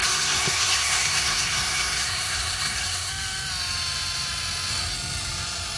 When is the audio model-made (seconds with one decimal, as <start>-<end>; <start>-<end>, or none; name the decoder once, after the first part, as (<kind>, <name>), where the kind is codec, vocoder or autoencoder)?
0.0-3.1 (codec, SNAC)